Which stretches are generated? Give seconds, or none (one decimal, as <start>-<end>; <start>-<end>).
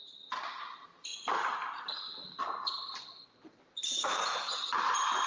none